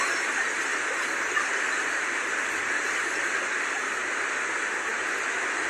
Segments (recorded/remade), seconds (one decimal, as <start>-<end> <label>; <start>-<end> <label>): 0.0-5.7 recorded